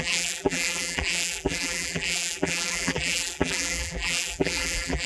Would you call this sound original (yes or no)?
no